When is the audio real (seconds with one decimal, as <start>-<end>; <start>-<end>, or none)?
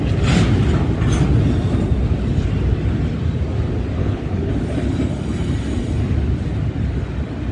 0.0-4.0; 4.5-7.5